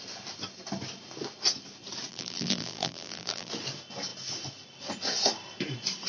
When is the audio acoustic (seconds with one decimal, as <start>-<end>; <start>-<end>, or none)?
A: 0.0-2.1; 3.5-6.1